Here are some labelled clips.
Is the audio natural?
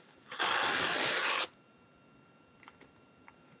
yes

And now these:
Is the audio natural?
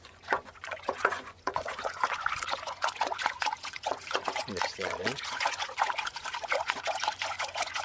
no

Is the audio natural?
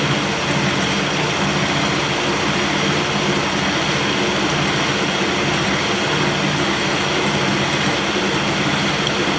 yes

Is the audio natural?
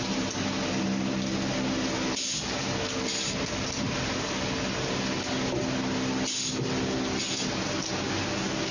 yes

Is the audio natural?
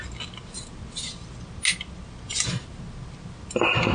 yes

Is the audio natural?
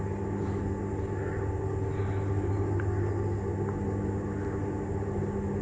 yes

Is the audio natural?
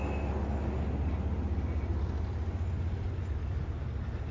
yes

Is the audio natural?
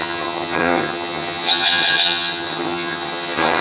no